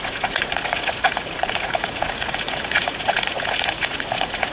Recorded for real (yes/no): no